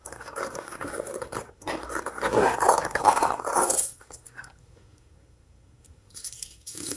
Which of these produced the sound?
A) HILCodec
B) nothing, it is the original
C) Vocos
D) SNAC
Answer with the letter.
D